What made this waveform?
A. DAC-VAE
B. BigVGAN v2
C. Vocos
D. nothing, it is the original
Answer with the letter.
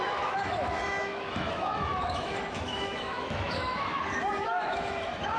A